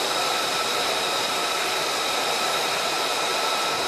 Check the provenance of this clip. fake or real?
fake